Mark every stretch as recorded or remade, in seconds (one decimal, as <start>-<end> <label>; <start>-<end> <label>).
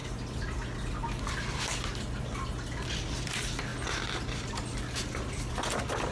0.0-6.1 recorded